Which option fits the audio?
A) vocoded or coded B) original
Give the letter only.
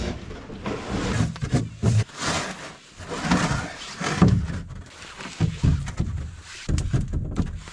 B